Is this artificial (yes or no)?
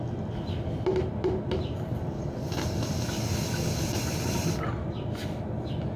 no